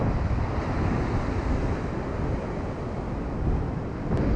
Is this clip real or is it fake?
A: real